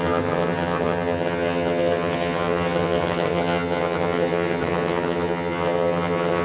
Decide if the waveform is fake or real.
fake